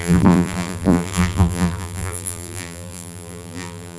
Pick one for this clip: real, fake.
fake